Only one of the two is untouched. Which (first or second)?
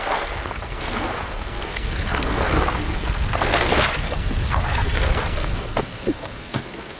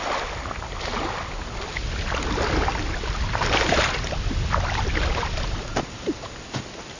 second